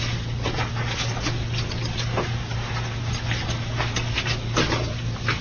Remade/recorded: recorded